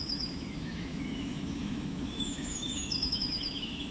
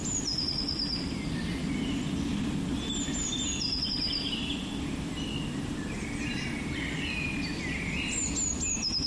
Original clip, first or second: second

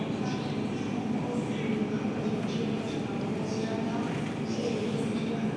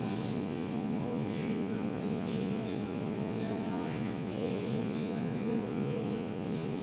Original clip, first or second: first